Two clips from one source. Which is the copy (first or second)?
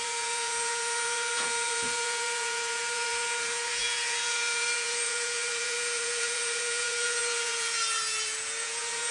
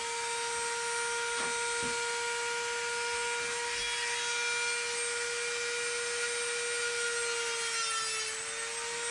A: first